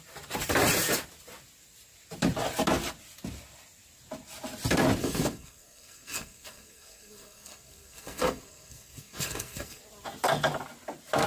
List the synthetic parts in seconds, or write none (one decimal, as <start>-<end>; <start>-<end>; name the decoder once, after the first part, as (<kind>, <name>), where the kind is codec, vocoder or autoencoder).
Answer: 5.0-9.8 (codec, SNAC)